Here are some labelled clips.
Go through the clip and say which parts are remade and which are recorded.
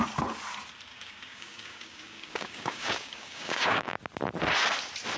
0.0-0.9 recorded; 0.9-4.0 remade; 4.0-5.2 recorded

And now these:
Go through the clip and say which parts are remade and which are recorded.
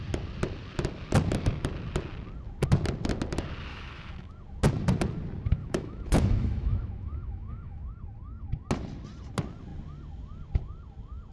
0.0-3.7 recorded; 3.7-4.3 remade; 4.3-5.6 recorded; 5.6-7.9 remade; 7.9-11.3 recorded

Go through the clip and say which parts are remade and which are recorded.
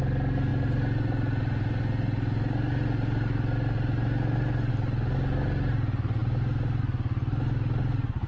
0.0-8.3 recorded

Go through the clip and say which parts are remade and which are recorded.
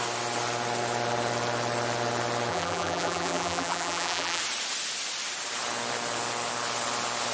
0.0-2.5 recorded; 2.5-4.4 remade; 4.4-7.3 recorded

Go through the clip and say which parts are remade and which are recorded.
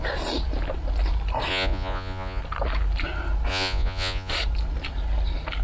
0.0-1.5 recorded; 1.5-2.4 remade; 2.4-3.5 recorded; 3.5-4.3 remade; 4.3-5.6 recorded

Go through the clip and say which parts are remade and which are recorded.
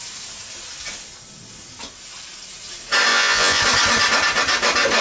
0.0-3.1 recorded; 3.1-3.6 remade; 3.6-5.0 recorded